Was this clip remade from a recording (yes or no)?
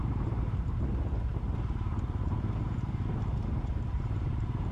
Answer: yes